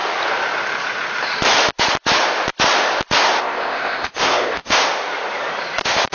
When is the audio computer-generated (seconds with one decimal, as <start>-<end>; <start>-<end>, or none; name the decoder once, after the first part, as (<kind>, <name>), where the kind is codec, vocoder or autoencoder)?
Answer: 3.4-4.6 (codec, ZipCodec)